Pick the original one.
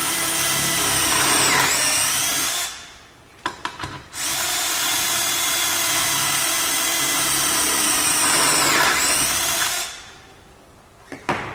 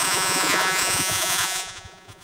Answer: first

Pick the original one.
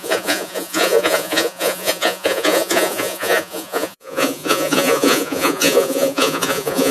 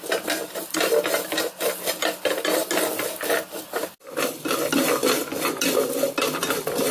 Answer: second